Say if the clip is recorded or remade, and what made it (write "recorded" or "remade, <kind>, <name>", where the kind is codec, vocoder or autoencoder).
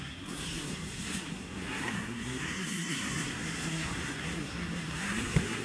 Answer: remade, codec, SNAC